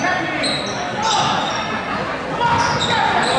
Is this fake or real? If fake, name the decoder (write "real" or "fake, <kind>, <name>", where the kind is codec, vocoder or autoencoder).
real